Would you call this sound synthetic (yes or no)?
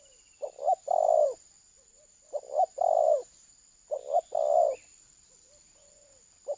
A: no